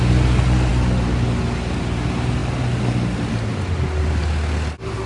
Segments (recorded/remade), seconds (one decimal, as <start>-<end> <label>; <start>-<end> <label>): 0.0-5.1 recorded